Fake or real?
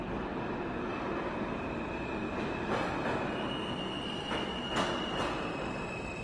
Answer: real